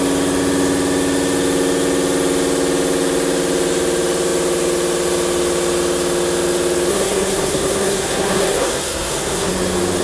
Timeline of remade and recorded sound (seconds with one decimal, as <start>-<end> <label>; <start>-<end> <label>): 0.0-6.9 recorded; 6.9-9.5 remade; 9.5-10.0 recorded